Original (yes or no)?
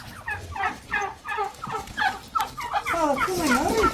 yes